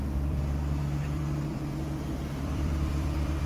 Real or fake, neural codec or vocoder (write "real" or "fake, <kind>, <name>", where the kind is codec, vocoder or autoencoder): fake, vocoder, BigVGAN v2